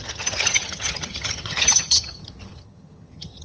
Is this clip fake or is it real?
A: fake